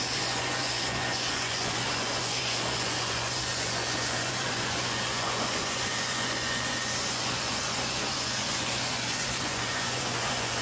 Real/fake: fake